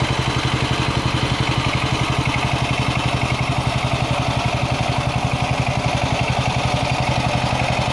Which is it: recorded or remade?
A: recorded